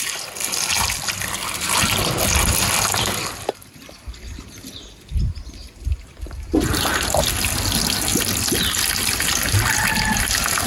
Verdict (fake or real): real